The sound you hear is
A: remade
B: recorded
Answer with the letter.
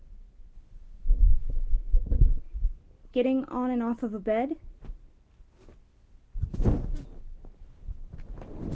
B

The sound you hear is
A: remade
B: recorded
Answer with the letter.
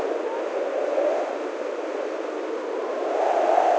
B